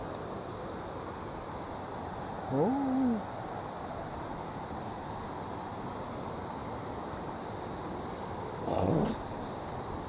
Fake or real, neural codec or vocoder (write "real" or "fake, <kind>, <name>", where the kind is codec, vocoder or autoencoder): real